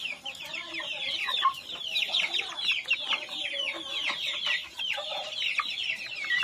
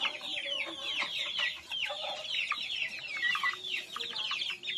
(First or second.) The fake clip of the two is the first